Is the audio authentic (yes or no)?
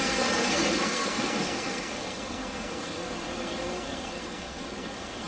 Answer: no